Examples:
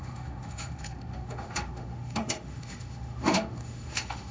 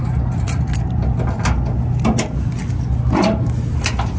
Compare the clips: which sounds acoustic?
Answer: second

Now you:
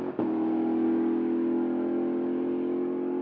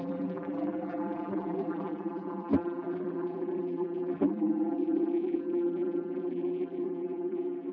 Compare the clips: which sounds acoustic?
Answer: first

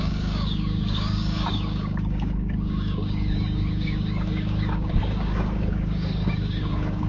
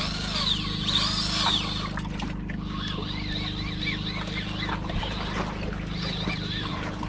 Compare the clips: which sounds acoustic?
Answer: second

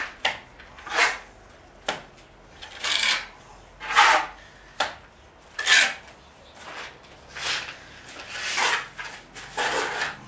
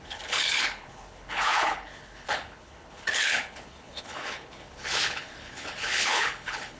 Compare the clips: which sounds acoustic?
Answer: first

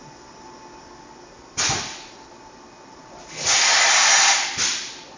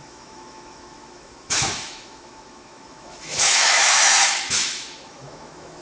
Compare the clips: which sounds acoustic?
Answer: first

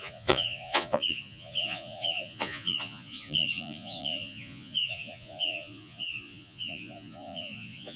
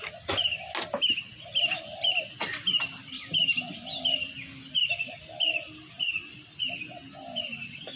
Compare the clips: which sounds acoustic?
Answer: second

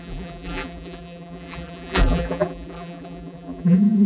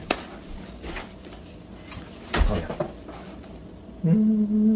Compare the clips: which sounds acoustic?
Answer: second